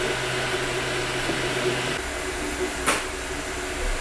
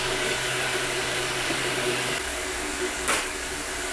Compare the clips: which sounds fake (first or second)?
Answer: second